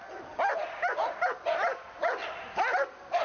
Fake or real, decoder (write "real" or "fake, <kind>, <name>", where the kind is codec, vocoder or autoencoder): real